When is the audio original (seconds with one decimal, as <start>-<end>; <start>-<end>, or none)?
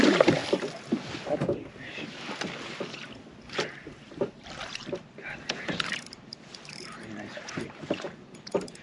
0.4-3.5